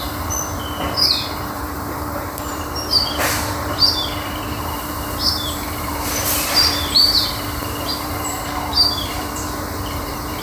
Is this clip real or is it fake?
fake